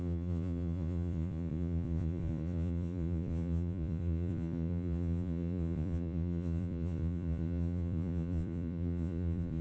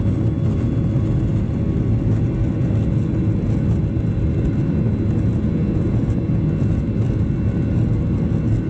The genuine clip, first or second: second